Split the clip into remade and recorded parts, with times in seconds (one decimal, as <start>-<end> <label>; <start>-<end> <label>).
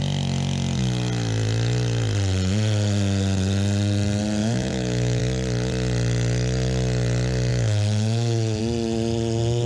0.0-4.4 recorded; 4.4-5.2 remade; 5.2-7.5 recorded; 7.5-8.6 remade; 8.6-9.7 recorded